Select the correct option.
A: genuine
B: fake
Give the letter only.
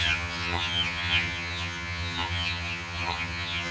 B